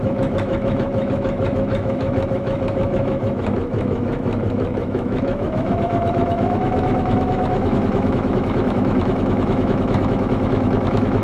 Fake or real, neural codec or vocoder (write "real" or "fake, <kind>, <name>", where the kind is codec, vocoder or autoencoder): fake, autoencoder, DAC-VAE